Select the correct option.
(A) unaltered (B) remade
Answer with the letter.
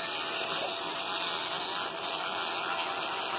A